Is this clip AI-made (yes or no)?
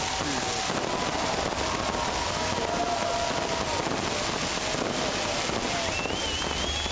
no